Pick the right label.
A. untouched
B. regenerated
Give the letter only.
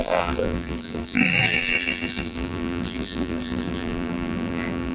B